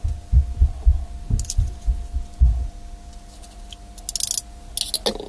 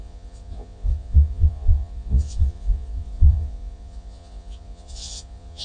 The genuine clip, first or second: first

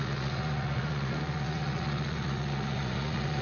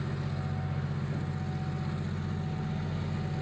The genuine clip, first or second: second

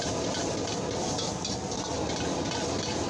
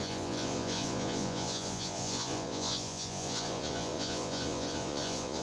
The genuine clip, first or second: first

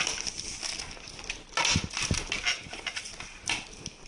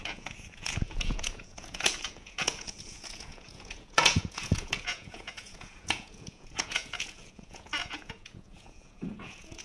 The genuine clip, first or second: first